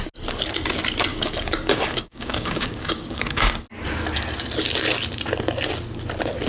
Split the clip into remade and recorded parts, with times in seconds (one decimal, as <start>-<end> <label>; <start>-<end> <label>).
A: 0.0-1.1 recorded; 1.1-3.5 remade; 3.5-6.5 recorded